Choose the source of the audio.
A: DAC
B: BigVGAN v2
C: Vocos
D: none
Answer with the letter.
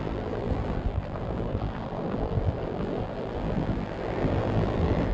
B